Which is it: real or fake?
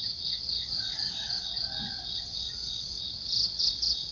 fake